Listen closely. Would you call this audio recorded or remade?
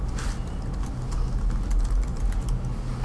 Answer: recorded